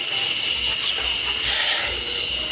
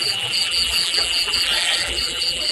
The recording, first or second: first